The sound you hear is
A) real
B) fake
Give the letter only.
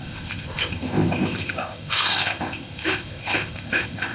B